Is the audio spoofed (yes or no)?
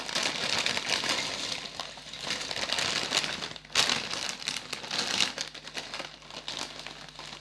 no